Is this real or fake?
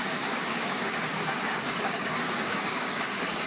fake